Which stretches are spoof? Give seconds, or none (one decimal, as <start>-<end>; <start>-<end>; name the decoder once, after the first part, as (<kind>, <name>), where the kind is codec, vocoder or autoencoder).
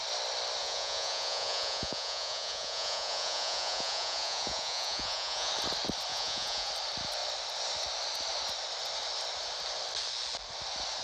0.6-5.5 (vocoder, Vocos); 6.1-6.7